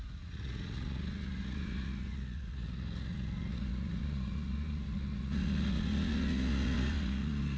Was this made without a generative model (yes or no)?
no